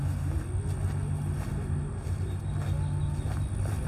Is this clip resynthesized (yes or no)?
no